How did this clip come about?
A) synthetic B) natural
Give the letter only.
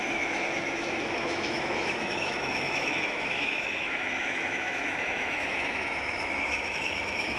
A